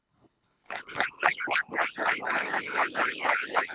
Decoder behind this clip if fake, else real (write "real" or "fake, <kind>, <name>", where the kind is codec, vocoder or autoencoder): fake, codec, HILCodec